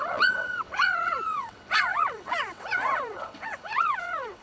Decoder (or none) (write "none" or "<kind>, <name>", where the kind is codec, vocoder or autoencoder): vocoder, WaveNeXt